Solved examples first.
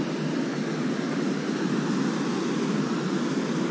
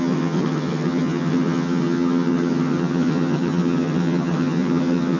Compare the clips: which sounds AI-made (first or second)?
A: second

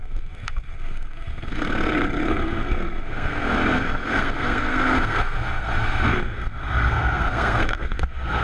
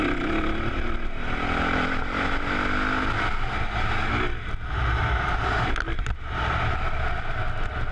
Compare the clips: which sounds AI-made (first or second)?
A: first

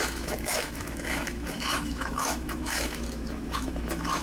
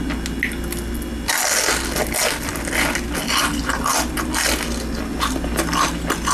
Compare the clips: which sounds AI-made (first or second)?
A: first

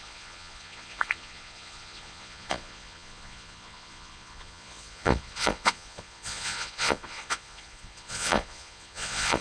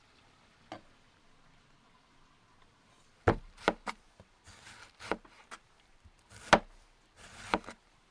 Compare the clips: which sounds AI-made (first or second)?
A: first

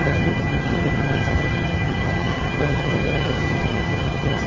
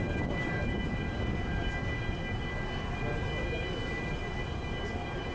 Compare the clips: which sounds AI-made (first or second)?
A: first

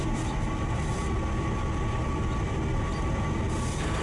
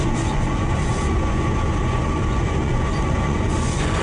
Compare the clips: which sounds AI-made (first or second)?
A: second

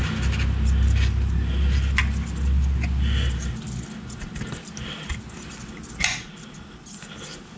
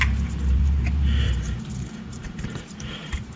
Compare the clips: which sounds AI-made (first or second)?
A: second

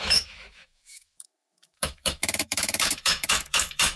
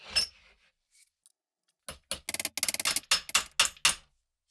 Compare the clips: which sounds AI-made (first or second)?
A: first